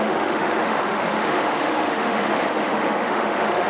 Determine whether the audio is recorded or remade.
remade